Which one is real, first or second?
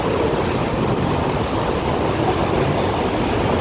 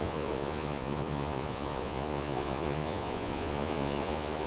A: first